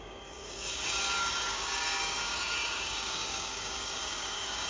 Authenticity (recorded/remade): remade